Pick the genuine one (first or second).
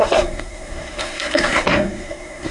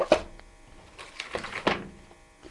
second